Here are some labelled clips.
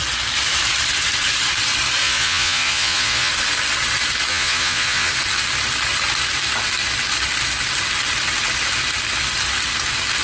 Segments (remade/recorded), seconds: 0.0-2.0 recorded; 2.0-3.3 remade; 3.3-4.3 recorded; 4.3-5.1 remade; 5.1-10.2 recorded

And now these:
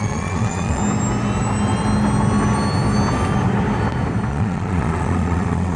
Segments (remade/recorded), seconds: 0.0-0.8 remade; 0.8-4.3 recorded; 4.3-5.8 remade

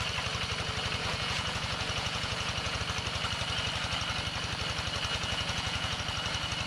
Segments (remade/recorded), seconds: 0.0-1.0 recorded; 1.0-2.8 remade; 2.8-5.1 recorded; 5.1-6.0 remade; 6.0-6.7 recorded

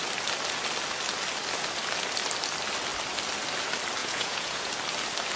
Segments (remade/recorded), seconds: 0.0-4.0 recorded; 4.0-4.7 remade; 4.7-5.4 recorded

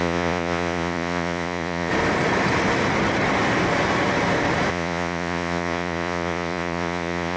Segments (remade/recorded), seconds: 0.0-1.9 remade; 1.9-4.7 recorded; 4.7-7.4 remade

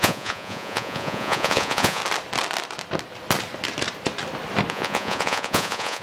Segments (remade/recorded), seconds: 0.0-2.0 remade; 2.0-4.7 recorded; 4.7-6.0 remade

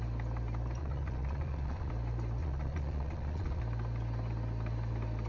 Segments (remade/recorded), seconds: 0.0-0.8 recorded; 0.8-1.9 remade; 1.9-2.4 recorded; 2.4-3.6 remade; 3.6-5.3 recorded